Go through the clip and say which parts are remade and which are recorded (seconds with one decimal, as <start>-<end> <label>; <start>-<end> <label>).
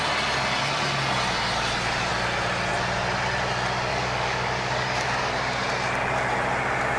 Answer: 0.0-3.9 recorded; 3.9-5.3 remade; 5.3-7.0 recorded